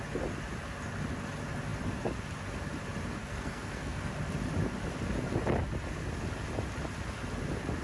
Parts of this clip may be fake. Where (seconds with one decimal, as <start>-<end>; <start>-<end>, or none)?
3.2-4.1